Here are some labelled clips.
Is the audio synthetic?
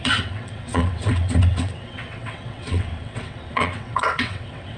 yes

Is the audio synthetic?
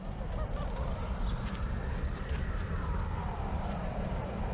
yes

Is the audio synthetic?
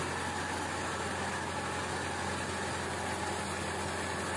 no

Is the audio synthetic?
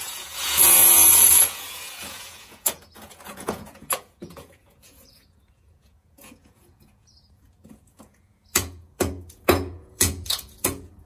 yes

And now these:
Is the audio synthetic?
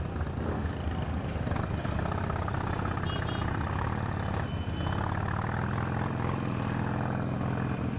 no